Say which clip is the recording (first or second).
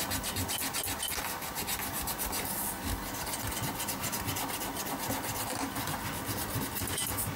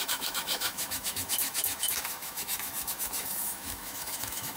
first